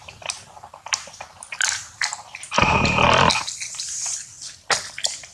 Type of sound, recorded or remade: recorded